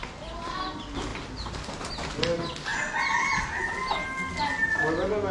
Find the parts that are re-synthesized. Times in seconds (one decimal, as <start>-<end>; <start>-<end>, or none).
none